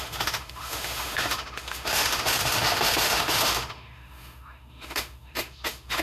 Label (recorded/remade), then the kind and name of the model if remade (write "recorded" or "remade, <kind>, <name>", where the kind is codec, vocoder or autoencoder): remade, autoencoder, DAC-VAE